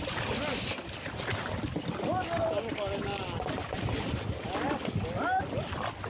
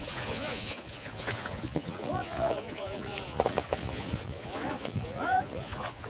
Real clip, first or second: first